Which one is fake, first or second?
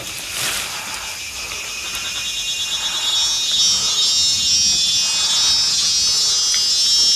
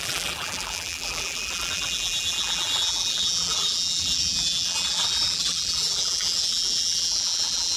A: second